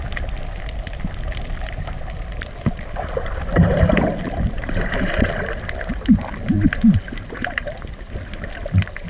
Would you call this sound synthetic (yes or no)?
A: no